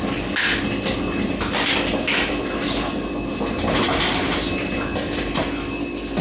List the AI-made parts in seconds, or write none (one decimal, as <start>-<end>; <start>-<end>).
none